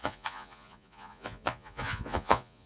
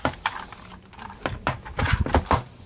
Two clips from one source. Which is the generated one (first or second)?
first